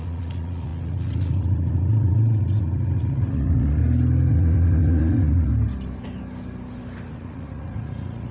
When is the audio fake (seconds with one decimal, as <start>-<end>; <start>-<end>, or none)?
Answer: 0.0-3.8; 4.3-5.5; 7.1-8.3